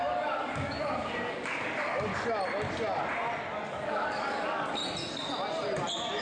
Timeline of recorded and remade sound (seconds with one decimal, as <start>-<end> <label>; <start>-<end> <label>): 0.0-2.1 remade; 2.1-3.4 recorded; 3.4-4.8 remade; 4.8-6.2 recorded